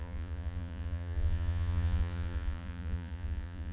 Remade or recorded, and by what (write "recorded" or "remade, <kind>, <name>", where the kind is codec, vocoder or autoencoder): remade, vocoder, Vocos